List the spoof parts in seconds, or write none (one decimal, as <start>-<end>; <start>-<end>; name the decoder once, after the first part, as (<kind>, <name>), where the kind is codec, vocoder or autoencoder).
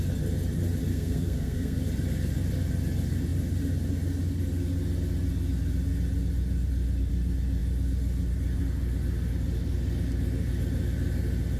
0.9-1.8 (codec, SNAC)